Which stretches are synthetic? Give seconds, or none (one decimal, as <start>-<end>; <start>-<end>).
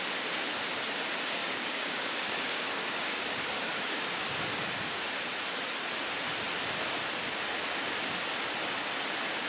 1.4-4.2